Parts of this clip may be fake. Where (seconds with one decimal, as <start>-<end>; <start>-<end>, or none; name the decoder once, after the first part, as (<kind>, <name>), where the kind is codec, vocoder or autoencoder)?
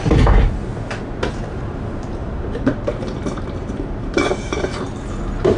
0.0-0.7 (vocoder, BigVGAN v2); 1.3-5.6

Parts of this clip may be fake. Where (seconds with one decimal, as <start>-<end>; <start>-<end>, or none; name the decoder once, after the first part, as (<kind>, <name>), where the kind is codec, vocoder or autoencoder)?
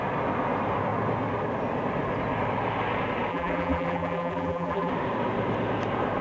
3.3-4.9 (vocoder, BigVGAN v2)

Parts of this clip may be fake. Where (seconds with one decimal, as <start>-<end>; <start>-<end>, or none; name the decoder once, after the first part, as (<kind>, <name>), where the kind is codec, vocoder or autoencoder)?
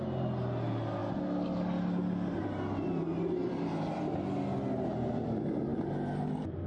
none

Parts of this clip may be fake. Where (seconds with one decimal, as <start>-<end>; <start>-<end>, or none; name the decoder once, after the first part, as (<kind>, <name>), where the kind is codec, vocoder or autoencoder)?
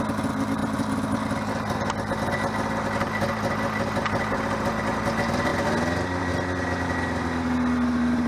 none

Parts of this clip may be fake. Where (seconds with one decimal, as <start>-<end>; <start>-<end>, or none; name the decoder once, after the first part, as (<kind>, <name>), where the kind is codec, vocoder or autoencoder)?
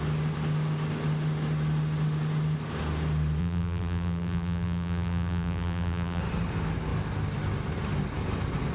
3.4-6.2 (vocoder, BigVGAN v2)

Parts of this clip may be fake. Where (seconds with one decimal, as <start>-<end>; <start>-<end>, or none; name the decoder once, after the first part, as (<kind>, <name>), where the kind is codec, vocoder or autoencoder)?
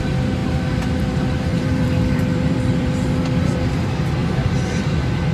1.5-3.5 (vocoder, BigVGAN v2); 4.2-4.8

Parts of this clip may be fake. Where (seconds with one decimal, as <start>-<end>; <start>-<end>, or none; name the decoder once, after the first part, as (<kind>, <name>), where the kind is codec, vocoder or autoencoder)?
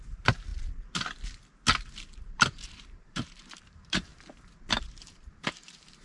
0.0-0.5 (vocoder, BigVGAN v2); 2.2-4.1; 4.8-6.0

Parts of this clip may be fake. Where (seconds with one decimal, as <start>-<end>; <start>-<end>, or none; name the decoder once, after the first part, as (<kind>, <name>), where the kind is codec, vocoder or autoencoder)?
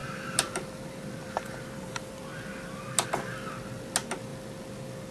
0.0-3.1 (vocoder, BigVGAN v2)